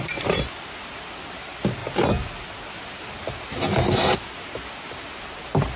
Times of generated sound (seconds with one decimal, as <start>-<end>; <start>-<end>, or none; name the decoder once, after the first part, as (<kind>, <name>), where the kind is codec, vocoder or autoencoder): none